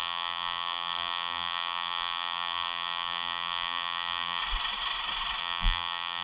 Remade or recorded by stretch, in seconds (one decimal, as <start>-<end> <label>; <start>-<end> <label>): 0.0-4.4 remade; 4.4-5.4 recorded; 5.4-6.2 remade